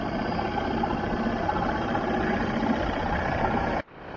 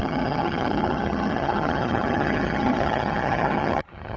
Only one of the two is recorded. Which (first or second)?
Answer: first